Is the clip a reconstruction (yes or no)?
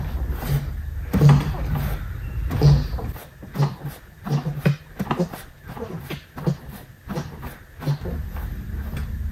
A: no